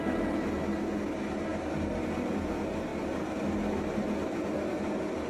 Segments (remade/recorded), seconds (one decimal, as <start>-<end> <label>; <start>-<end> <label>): 0.0-5.3 recorded